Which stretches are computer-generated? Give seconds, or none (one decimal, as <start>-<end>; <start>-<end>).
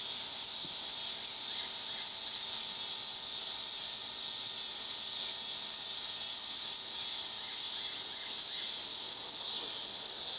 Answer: 0.0-0.8; 3.4-4.1